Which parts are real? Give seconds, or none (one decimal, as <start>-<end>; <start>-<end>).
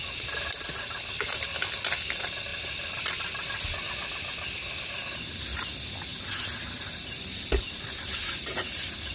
0.0-2.5; 5.4-6.1